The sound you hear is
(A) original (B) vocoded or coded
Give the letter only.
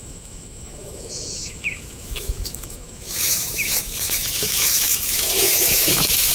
B